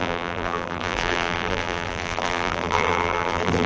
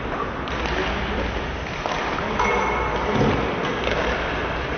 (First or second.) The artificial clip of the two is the first